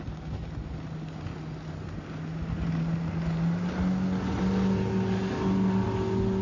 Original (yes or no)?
yes